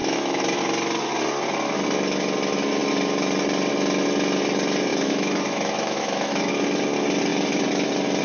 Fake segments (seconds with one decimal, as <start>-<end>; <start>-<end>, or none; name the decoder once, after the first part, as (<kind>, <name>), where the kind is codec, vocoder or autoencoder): 0.0-0.6 (autoencoder, DAC-VAE); 4.9-6.5